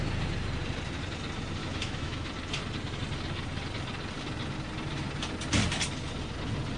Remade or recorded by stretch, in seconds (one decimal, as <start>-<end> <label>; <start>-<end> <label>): 0.0-1.6 recorded; 1.6-2.3 remade; 2.3-6.8 recorded

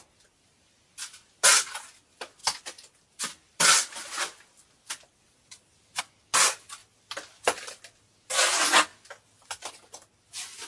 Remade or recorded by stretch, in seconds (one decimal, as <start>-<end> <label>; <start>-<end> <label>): 0.0-2.4 recorded; 2.4-6.0 remade; 6.0-6.8 recorded; 6.8-7.7 remade; 7.7-8.9 recorded; 8.9-9.7 remade; 9.7-10.7 recorded

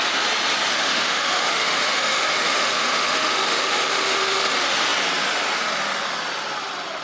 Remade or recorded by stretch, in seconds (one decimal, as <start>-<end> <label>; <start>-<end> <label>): 0.0-0.7 recorded; 0.7-4.4 remade; 4.4-7.0 recorded

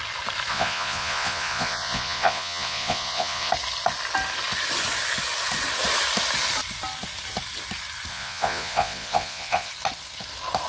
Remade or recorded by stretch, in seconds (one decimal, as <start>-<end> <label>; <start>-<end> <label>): 0.0-0.5 recorded; 0.5-3.5 remade; 3.5-8.1 recorded; 8.1-9.7 remade; 9.7-10.7 recorded

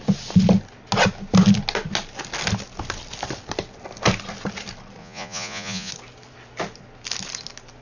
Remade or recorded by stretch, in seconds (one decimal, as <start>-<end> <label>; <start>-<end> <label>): 0.0-5.0 recorded; 5.0-5.9 remade; 5.9-7.8 recorded

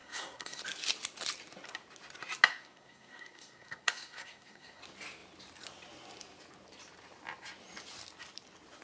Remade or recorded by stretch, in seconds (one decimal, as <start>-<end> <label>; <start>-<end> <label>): 0.0-0.6 remade; 0.6-2.5 recorded; 2.5-4.8 remade; 4.8-8.8 recorded